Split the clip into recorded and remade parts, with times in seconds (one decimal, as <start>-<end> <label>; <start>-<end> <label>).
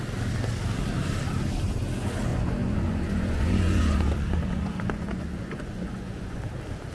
0.0-2.3 recorded; 2.3-6.4 remade; 6.4-6.9 recorded